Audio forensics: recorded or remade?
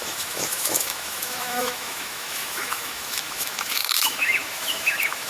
remade